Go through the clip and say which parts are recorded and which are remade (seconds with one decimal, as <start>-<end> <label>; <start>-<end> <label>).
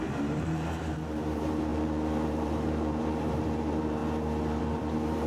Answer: 0.0-4.0 remade; 4.0-4.6 recorded; 4.6-5.3 remade